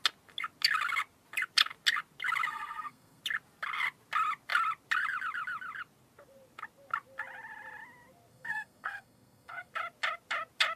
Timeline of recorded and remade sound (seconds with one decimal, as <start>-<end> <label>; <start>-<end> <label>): 0.0-2.5 recorded; 2.5-3.2 remade; 3.2-8.3 recorded; 8.3-9.7 remade; 9.7-10.8 recorded